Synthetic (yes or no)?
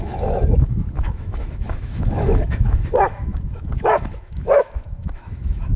yes